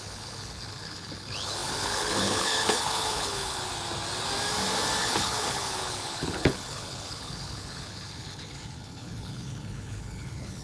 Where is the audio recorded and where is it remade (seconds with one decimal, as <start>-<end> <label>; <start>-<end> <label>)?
0.0-3.7 remade; 3.7-5.0 recorded; 5.0-10.6 remade